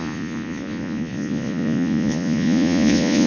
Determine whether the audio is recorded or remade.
remade